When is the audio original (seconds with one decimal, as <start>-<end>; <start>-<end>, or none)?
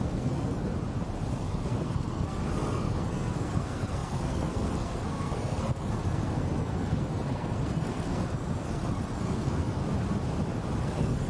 0.7-1.3; 9.8-10.8